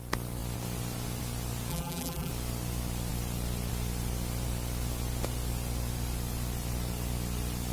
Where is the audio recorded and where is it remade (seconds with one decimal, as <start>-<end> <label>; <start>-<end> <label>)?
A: 0.0-1.7 recorded; 1.7-2.3 remade; 2.3-7.7 recorded